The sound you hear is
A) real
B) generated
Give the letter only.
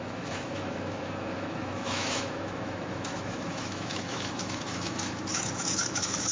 B